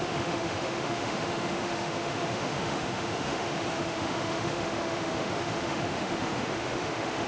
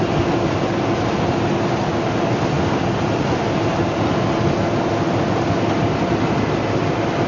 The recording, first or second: second